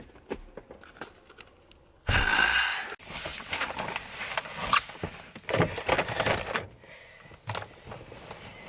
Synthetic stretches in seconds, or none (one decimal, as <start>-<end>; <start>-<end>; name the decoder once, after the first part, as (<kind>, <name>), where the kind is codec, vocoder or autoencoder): none